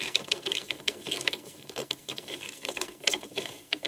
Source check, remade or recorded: remade